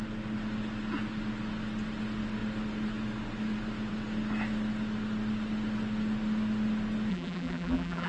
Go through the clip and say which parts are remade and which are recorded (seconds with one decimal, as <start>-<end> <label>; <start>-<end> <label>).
0.0-7.1 recorded; 7.1-8.1 remade